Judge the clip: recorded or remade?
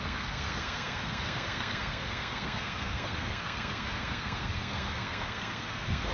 remade